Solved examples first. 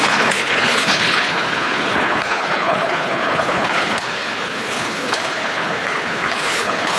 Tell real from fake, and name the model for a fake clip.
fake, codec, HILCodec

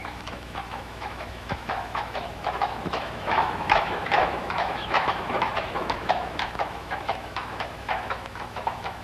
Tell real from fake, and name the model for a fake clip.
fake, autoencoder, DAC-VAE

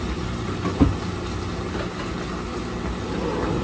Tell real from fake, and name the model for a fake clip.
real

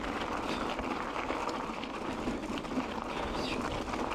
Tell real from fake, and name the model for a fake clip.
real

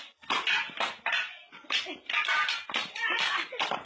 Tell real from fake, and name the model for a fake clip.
real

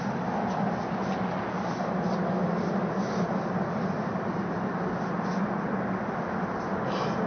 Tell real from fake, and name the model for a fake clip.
real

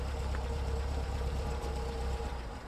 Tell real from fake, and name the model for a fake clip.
fake, vocoder, BigVGAN v2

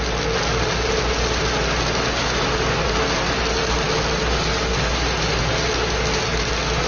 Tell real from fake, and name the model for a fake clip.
real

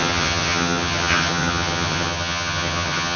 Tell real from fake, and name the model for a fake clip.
fake, vocoder, HiFi-GAN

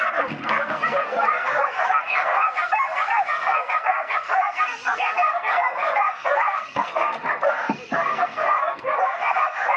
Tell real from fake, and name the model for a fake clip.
fake, codec, SNAC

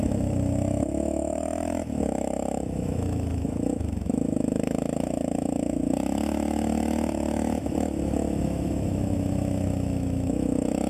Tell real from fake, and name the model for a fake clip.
fake, autoencoder, DAC-VAE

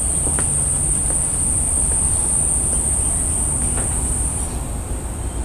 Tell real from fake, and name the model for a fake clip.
real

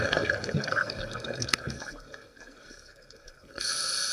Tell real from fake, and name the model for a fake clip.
fake, codec, SNAC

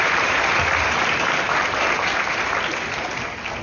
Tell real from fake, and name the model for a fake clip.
real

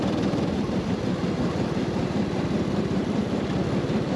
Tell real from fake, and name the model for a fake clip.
fake, vocoder, BigVGAN v2